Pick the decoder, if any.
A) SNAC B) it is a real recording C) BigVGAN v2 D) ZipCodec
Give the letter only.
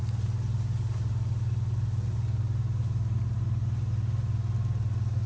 B